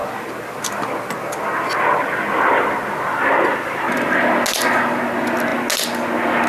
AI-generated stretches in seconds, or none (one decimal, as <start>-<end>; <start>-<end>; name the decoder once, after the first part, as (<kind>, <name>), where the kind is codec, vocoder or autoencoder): none